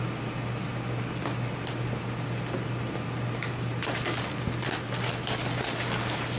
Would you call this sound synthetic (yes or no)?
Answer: no